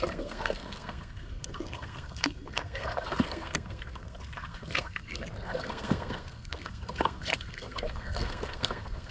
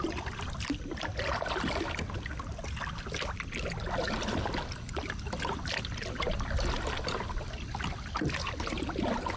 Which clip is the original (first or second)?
second